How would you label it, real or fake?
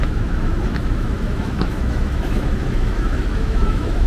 fake